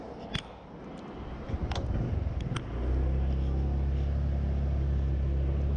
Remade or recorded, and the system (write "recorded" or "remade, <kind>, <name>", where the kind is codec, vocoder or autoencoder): recorded